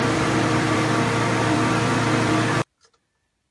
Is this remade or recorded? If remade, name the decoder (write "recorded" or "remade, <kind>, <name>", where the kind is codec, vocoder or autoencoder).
remade, vocoder, BigVGAN v2